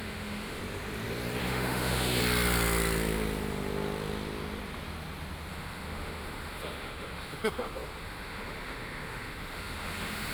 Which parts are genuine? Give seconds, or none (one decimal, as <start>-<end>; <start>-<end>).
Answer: 0.6-1.4; 2.2-5.5